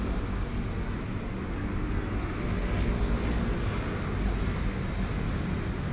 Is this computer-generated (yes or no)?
no